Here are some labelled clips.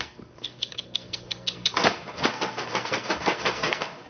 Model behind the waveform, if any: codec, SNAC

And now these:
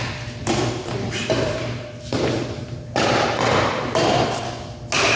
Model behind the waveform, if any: none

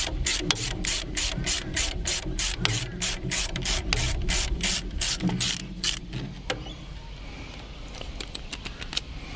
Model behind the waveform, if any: none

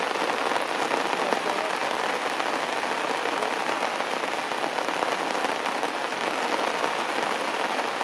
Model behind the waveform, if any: none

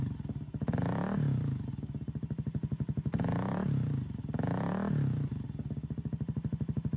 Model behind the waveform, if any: none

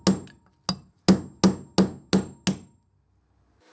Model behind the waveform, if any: none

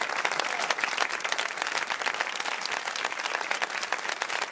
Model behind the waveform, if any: none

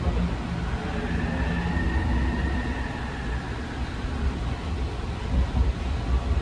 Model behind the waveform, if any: none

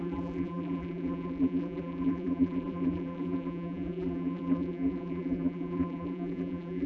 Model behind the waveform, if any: vocoder, BigVGAN v2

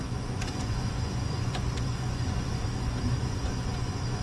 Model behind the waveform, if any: vocoder, Vocos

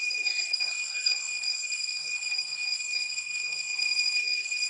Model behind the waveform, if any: codec, SNAC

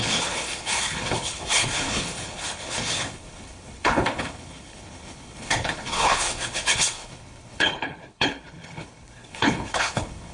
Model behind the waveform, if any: codec, HILCodec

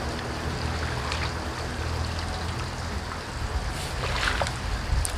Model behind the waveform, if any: none